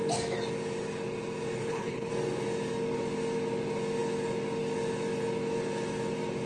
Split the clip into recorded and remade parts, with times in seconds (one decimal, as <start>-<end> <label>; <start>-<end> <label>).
0.0-1.6 recorded; 1.6-2.1 remade; 2.1-6.5 recorded